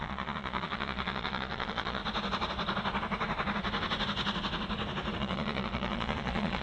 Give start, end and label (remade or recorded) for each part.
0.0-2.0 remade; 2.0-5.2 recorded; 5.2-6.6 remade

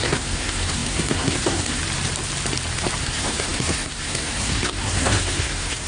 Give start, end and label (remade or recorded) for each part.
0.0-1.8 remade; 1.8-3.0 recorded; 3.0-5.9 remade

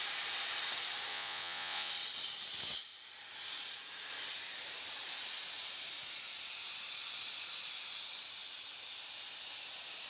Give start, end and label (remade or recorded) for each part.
0.0-1.1 recorded; 1.1-1.9 remade; 1.9-10.1 recorded